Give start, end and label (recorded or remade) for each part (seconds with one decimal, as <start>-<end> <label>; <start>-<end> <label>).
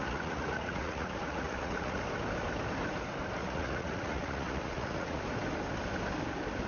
0.0-2.0 remade; 2.0-3.4 recorded; 3.4-5.2 remade; 5.2-6.7 recorded